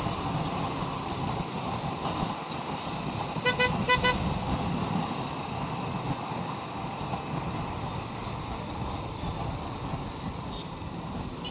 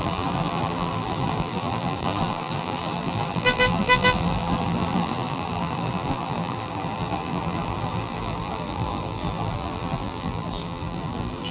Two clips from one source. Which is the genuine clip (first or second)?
first